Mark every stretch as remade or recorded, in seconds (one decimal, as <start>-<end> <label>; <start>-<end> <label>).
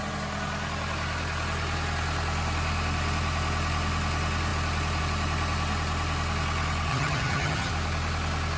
0.0-6.9 recorded; 6.9-7.7 remade; 7.7-8.6 recorded